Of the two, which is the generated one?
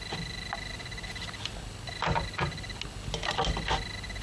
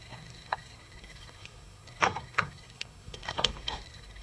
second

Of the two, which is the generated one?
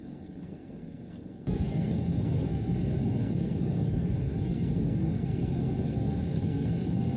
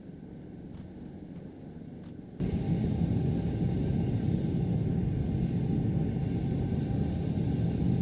first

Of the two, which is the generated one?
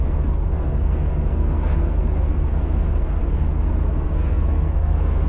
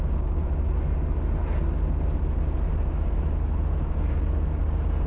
first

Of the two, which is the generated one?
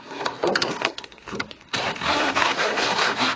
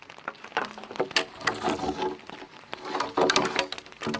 first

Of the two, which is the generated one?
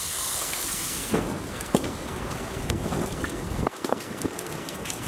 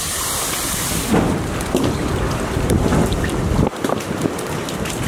first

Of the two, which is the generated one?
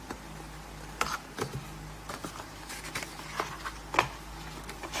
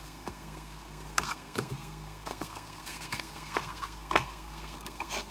second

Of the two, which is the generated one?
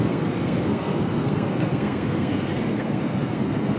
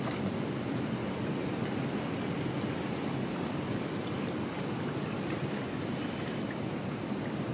first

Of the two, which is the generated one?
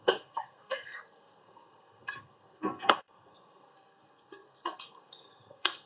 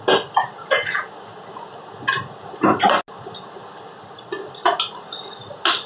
first